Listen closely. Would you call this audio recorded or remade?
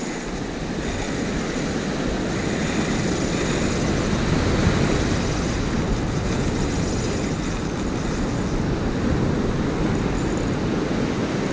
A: recorded